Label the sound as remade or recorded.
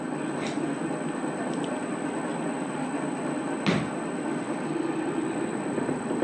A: recorded